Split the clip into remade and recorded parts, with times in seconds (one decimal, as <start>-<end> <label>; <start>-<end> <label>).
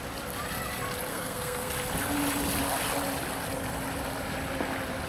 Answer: 0.0-1.1 recorded; 1.1-1.7 remade; 1.7-5.1 recorded